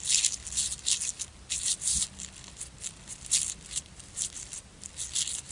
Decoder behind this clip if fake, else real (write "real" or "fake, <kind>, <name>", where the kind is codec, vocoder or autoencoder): real